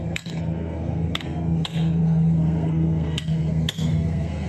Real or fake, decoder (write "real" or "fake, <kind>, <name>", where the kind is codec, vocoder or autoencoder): fake, codec, SNAC